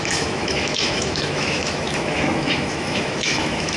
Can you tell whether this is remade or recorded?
remade